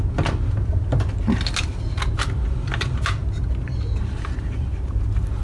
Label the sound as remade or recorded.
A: recorded